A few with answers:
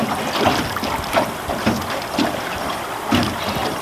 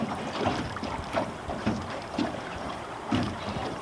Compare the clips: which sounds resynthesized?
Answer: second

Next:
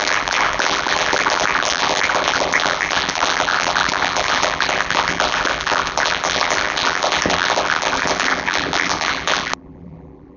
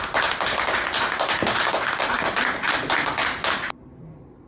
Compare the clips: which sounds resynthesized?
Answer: first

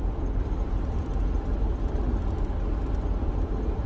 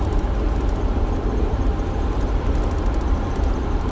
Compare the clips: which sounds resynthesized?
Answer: second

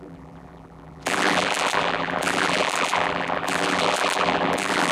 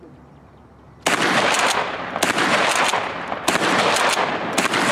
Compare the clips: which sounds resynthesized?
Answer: first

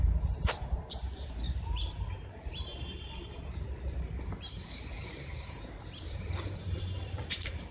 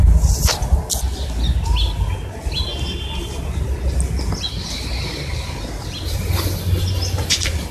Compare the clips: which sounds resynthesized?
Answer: first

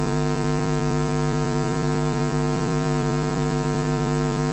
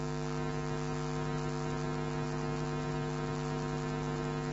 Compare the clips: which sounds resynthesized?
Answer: first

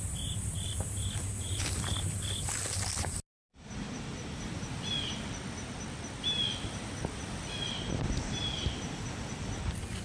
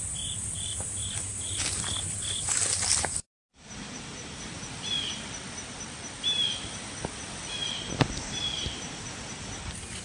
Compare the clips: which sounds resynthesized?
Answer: second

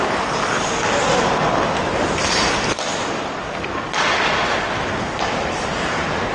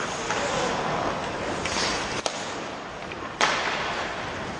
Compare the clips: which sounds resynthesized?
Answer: second